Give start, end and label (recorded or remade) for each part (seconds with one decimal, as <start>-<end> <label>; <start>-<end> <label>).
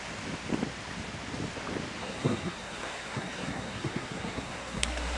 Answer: 0.0-2.0 recorded; 2.0-5.2 remade